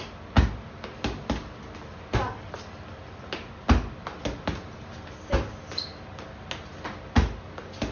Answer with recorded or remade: recorded